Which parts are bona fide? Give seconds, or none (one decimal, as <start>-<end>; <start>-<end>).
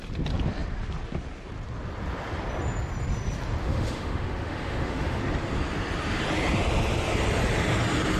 0.0-3.6; 5.2-8.2